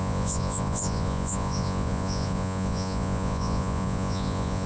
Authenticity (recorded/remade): remade